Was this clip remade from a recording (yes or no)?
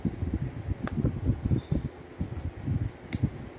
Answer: no